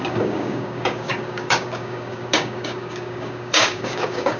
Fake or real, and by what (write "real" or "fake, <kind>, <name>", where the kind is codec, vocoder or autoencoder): fake, codec, DAC